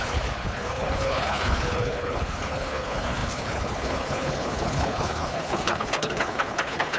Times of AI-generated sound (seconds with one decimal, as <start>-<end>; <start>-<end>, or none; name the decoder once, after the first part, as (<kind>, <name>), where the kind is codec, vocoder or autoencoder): 0.0-7.0 (codec, HILCodec)